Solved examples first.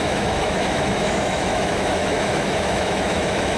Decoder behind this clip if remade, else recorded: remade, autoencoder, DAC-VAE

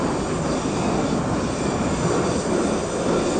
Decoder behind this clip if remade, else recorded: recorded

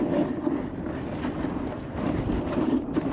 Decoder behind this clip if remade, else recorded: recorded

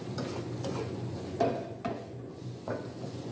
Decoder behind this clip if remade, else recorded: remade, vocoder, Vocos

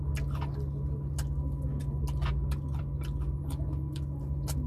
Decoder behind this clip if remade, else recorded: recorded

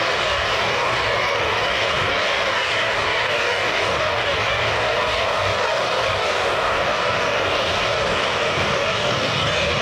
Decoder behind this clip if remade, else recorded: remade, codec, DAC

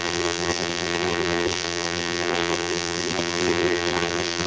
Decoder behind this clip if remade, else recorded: remade, vocoder, BigVGAN v2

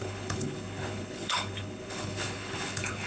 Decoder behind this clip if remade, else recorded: remade, codec, HILCodec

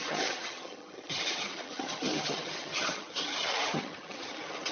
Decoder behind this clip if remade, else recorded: remade, vocoder, HiFi-GAN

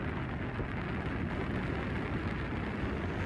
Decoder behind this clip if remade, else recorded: recorded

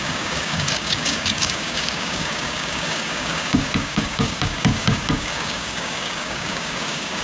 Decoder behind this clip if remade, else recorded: remade, codec, DAC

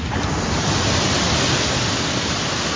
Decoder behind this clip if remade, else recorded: recorded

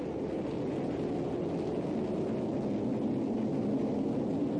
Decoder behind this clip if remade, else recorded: recorded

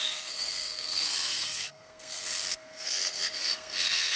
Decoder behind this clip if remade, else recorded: remade, codec, SNAC